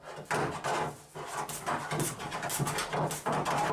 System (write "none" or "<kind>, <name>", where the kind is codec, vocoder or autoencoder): none